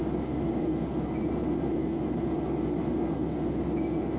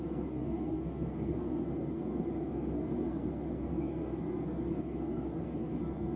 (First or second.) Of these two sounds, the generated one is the second